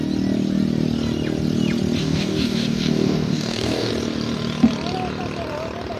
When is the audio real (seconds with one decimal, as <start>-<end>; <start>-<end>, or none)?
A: 0.0-2.0; 3.9-6.0